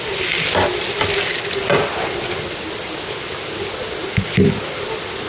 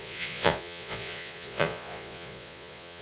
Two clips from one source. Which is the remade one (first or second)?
second